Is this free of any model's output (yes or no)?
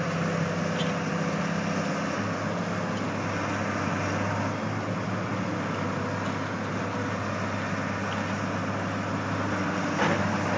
yes